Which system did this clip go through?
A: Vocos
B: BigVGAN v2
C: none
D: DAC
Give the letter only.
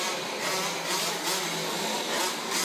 C